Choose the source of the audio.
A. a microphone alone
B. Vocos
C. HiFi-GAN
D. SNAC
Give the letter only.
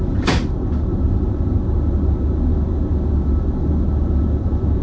A